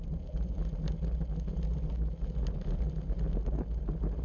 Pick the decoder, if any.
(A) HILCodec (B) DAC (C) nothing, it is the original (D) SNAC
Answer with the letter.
C